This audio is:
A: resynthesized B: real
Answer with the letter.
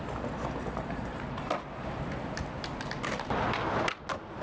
B